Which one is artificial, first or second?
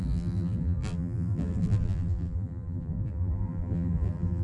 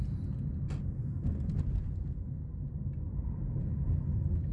first